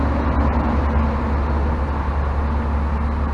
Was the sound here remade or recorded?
recorded